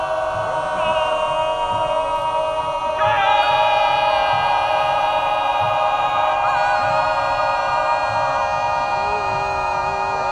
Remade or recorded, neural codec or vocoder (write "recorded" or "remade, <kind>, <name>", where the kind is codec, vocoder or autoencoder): recorded